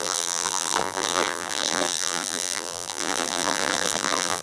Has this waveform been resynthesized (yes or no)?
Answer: yes